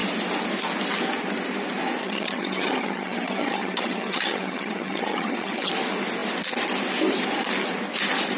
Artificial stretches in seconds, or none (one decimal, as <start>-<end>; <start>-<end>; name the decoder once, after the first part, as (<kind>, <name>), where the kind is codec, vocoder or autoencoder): 2.0-5.7 (vocoder, HiFi-GAN)